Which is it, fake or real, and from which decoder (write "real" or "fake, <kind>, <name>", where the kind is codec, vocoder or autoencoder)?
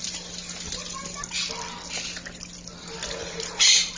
real